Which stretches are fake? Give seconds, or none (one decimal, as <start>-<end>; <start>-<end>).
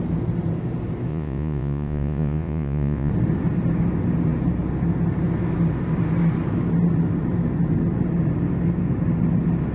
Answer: 1.1-3.1